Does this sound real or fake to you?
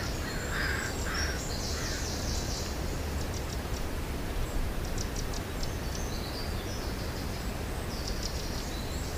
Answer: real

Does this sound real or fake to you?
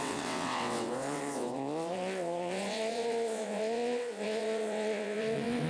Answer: fake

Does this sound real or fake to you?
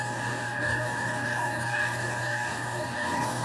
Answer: fake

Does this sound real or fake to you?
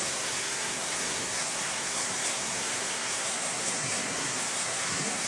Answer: fake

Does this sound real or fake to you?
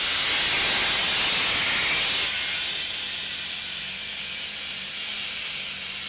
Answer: real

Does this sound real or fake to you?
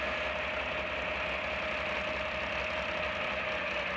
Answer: real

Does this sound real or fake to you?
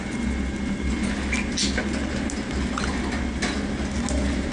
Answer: real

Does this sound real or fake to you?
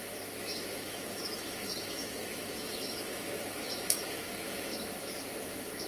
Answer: fake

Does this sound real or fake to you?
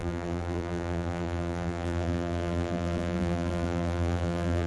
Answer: fake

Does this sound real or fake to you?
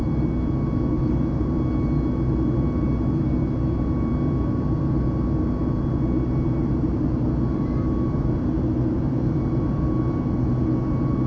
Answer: real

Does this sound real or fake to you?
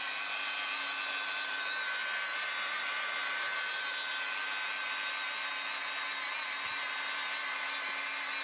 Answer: real